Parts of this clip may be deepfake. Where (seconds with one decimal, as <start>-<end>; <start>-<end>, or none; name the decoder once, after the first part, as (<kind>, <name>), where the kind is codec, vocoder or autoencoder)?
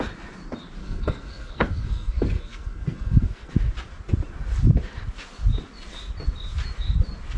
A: 0.8-3.5 (codec, SNAC)